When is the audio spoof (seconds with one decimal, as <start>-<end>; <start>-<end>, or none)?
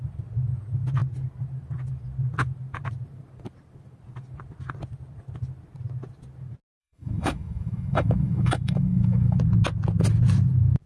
6.8-9.4